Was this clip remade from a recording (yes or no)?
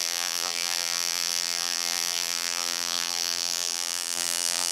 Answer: yes